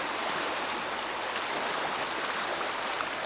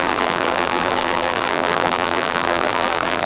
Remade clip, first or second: second